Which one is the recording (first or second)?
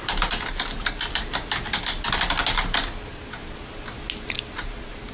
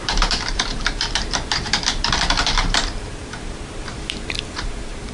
first